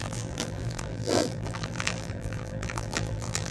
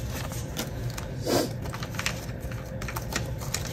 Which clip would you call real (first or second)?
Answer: second